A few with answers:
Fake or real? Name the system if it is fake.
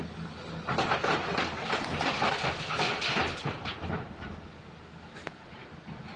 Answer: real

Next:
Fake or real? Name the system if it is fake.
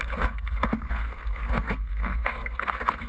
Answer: fake, codec, SNAC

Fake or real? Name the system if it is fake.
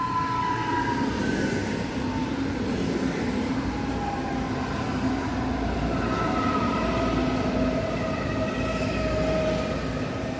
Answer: real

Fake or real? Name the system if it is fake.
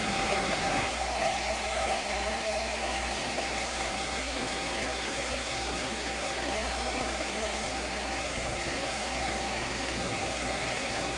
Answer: fake, codec, SNAC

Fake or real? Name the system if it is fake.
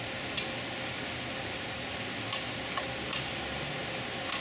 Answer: real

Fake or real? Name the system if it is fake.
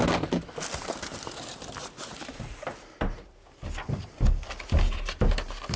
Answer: real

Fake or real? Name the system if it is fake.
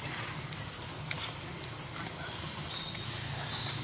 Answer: real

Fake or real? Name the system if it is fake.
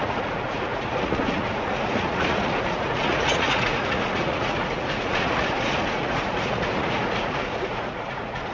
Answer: fake, vocoder, Vocos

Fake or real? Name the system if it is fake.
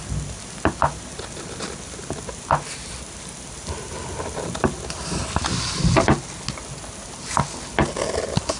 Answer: real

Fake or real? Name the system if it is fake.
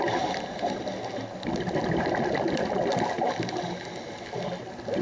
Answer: real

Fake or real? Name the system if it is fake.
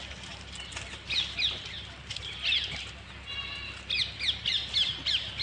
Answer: real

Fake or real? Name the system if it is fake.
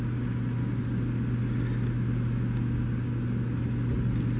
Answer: real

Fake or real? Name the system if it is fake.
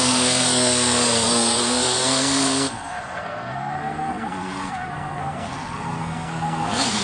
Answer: fake, codec, SNAC